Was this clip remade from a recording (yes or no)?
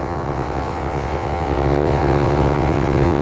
yes